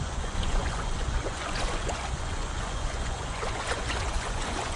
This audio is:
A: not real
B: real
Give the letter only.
A